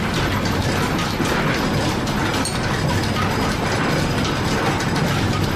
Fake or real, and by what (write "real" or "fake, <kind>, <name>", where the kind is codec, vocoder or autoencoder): real